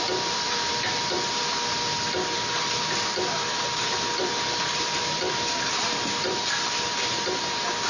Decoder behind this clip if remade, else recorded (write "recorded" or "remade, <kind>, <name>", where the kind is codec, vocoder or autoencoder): remade, vocoder, BigVGAN v2